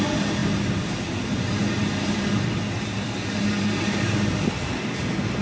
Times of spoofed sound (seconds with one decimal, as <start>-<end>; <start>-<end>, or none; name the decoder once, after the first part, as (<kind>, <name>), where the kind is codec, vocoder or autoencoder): none